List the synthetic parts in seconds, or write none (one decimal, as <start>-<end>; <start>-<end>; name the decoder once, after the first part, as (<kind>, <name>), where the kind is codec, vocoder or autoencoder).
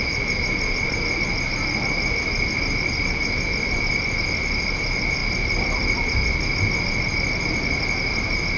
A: none